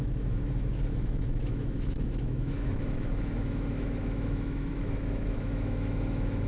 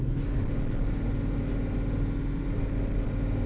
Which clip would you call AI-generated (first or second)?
first